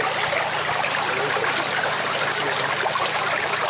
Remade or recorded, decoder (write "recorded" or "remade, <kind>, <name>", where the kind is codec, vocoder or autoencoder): recorded